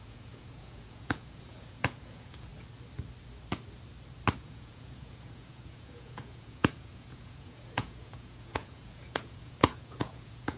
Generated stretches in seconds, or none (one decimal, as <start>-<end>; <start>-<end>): 0.0-2.5; 4.4-10.6